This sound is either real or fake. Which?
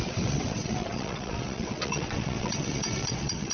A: fake